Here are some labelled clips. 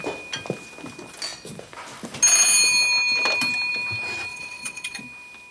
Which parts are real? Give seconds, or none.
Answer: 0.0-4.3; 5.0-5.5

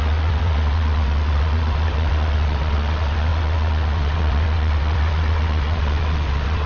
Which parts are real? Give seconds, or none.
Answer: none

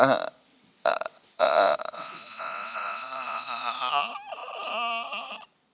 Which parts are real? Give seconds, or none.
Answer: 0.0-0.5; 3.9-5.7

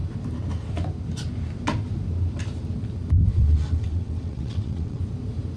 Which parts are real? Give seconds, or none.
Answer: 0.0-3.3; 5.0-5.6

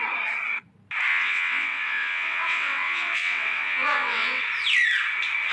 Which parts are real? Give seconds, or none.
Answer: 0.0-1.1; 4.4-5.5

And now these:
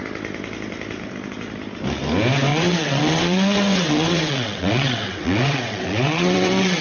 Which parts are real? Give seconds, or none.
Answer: 0.0-2.5

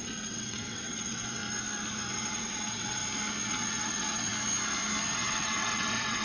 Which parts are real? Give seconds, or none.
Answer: 1.4-2.1; 3.0-3.5; 4.3-5.1

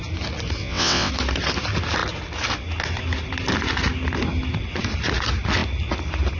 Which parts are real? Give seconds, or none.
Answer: 0.0-0.6; 1.1-6.4